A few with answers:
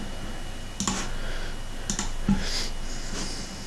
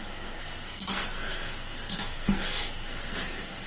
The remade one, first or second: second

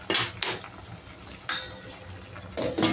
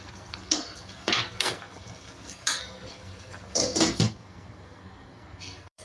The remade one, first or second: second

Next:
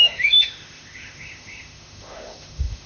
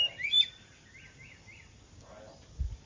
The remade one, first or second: first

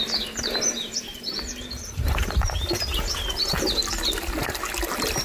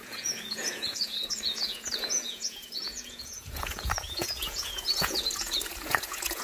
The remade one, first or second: second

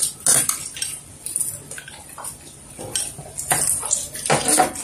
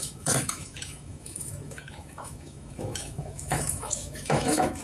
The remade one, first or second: second